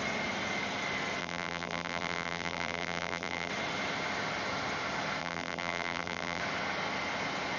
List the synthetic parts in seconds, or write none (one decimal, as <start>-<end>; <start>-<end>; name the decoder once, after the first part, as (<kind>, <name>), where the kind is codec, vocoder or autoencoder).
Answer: 1.2-3.5 (vocoder, BigVGAN v2); 5.2-6.4